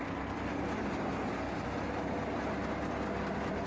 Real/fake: real